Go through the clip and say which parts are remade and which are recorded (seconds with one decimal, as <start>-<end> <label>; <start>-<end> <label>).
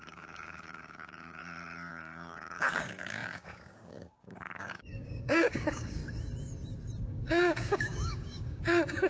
0.0-1.4 remade; 1.4-1.9 recorded; 1.9-6.0 remade; 6.0-7.0 recorded; 7.0-9.1 remade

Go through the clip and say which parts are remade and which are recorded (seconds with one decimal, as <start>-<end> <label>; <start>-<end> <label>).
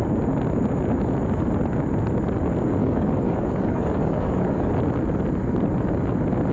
0.0-2.8 recorded; 2.8-4.7 remade; 4.7-6.5 recorded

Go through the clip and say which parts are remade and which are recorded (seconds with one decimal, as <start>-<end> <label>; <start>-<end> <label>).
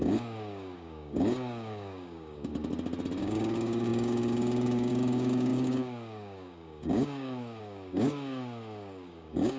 0.0-2.5 remade; 2.5-3.2 recorded; 3.2-9.6 remade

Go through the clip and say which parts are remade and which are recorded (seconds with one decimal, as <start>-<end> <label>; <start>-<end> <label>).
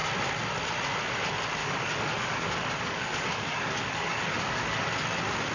0.0-1.6 recorded; 1.6-4.9 remade; 4.9-5.5 recorded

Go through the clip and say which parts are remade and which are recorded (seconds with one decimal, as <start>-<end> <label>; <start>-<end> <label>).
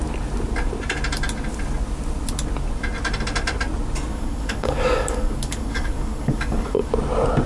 0.0-4.1 recorded; 4.1-6.9 remade; 6.9-7.5 recorded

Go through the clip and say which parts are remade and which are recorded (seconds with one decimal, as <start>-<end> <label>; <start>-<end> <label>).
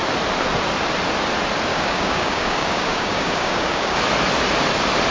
0.0-1.7 recorded; 1.7-4.0 remade; 4.0-5.1 recorded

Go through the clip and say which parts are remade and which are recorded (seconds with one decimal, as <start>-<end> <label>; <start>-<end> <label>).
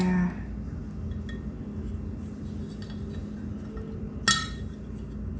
0.0-5.4 recorded